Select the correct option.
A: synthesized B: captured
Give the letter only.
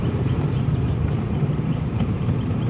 A